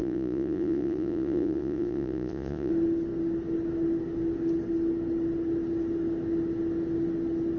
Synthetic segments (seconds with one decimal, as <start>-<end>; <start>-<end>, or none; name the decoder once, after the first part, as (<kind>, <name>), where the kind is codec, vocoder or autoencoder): 0.0-2.7 (vocoder, Vocos)